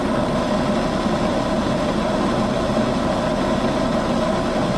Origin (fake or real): real